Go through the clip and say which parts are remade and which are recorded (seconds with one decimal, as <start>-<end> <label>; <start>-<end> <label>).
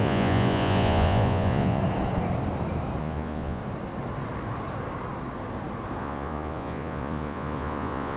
0.0-1.8 remade; 1.8-3.0 recorded; 3.0-3.6 remade; 3.6-6.0 recorded; 6.0-8.2 remade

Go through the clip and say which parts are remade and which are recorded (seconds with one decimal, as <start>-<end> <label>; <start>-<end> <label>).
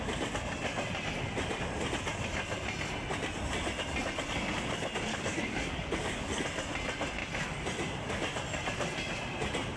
0.0-5.1 recorded; 5.1-6.4 remade; 6.4-9.8 recorded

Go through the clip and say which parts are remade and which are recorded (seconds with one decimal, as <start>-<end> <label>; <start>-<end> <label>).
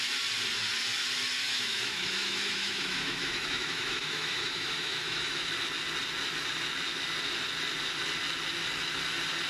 0.0-1.4 recorded; 1.4-5.5 remade; 5.5-9.5 recorded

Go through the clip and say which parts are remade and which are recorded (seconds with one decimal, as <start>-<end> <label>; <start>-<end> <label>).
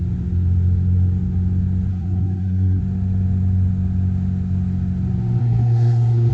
0.0-1.9 recorded; 1.9-2.8 remade; 2.8-5.4 recorded; 5.4-6.3 remade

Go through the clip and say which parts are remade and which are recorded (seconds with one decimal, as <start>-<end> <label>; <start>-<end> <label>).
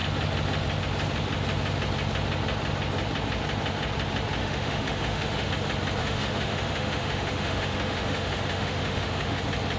0.0-4.4 recorded; 4.4-5.5 remade; 5.5-6.0 recorded; 6.0-9.4 remade; 9.4-9.8 recorded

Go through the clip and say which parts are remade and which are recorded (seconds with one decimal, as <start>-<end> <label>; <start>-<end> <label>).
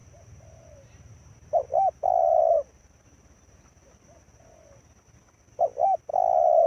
0.0-4.0 remade; 4.0-6.7 recorded